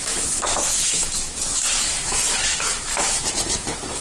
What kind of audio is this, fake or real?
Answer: fake